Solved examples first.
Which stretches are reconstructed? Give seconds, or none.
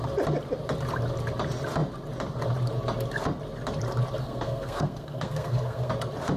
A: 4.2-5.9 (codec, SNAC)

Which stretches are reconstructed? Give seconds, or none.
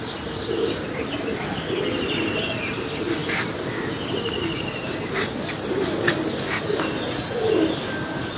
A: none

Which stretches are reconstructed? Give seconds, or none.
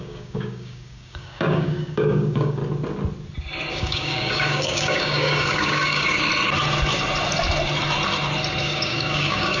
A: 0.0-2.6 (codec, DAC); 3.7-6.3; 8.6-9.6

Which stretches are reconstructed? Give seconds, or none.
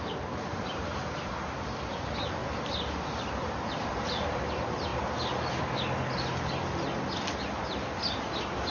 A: 0.0-2.4 (vocoder, BigVGAN v2); 3.4-4.9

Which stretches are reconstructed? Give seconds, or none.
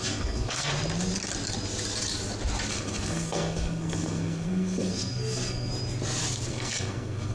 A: 0.0-0.7 (codec, SNAC); 2.7-5.7; 6.5-7.3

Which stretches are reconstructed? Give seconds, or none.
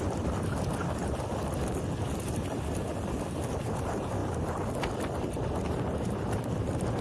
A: 0.0-0.8 (vocoder, BigVGAN v2); 3.6-4.2; 5.2-7.0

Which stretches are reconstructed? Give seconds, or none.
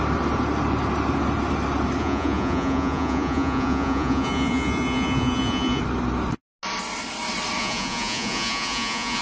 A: 2.0-5.8 (vocoder, Vocos); 7.6-9.2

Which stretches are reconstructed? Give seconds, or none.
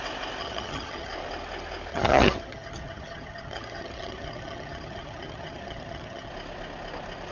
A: 0.4-1.1 (vocoder, HiFi-GAN); 1.9-6.3